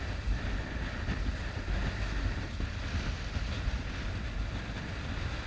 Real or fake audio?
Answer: real